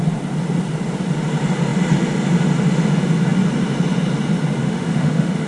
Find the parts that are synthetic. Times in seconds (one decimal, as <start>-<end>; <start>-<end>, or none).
4.6-5.5